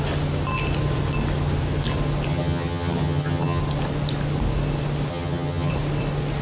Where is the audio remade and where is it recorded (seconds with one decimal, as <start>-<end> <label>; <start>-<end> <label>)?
0.0-2.3 recorded; 2.3-3.6 remade; 3.6-5.1 recorded; 5.1-5.7 remade; 5.7-6.4 recorded